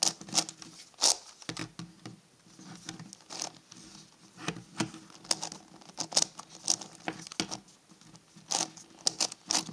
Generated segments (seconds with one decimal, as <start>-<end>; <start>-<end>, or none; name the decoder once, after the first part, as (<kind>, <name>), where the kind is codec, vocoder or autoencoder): none

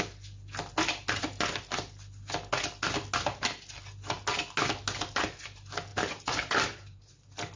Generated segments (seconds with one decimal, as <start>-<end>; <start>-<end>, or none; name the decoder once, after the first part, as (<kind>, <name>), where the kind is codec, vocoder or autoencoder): 5.9-7.1 (vocoder, BigVGAN v2)

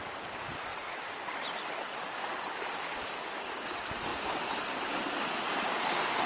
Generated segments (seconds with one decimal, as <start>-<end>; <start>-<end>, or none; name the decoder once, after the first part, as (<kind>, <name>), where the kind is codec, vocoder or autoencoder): 0.7-2.4 (vocoder, BigVGAN v2); 4.1-6.3

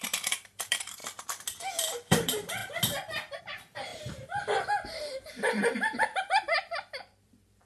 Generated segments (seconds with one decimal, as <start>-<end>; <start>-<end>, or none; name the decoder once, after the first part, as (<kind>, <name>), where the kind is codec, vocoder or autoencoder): 0.0-1.0 (vocoder, BigVGAN v2); 1.7-2.6; 3.4-7.7